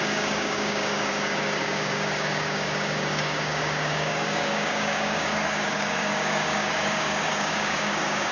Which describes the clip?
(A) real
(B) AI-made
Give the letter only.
B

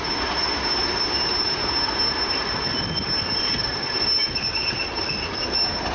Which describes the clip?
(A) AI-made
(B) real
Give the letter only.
B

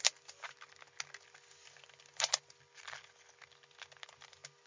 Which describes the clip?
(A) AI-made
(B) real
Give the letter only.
B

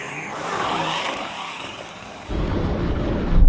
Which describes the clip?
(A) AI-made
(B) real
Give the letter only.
A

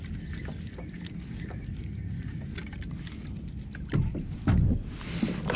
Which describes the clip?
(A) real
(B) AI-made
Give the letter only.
A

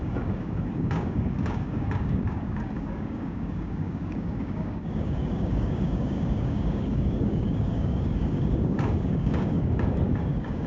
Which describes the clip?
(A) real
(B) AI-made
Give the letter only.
B